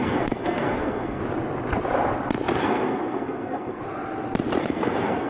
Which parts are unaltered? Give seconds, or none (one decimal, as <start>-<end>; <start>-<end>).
1.2-2.6; 3.8-4.6